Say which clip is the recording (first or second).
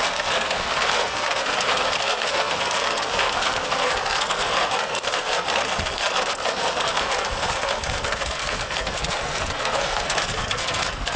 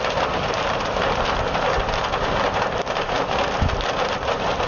second